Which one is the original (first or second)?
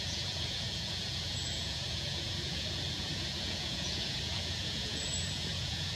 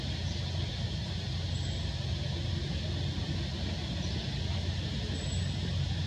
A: second